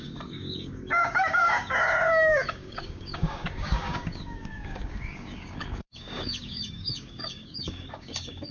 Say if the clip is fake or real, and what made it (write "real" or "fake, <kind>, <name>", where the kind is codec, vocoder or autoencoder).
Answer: fake, codec, DAC